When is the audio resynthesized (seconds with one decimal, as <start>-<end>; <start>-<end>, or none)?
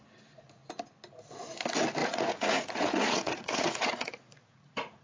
2.0-5.0